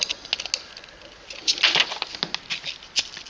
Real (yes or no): yes